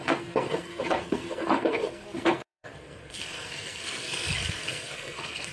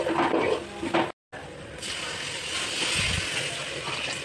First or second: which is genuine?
second